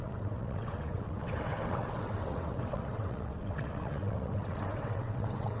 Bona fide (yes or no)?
no